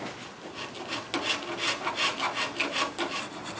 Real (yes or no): yes